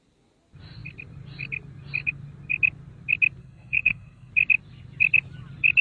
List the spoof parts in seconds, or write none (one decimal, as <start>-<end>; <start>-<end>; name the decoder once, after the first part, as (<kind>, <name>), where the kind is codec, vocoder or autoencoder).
3.4-4.3 (codec, SNAC)